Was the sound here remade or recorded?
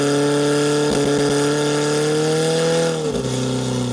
recorded